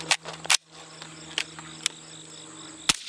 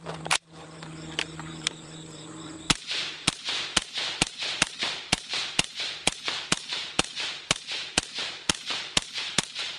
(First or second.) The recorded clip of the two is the first